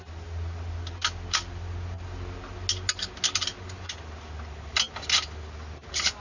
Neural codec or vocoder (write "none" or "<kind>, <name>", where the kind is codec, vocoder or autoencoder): none